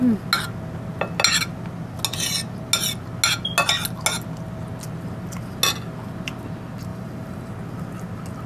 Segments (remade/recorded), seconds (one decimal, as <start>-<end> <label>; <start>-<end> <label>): 0.0-6.9 recorded; 6.9-7.5 remade; 7.5-8.5 recorded